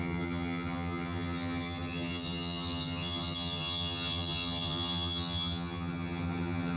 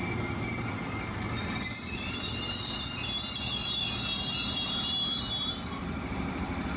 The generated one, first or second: first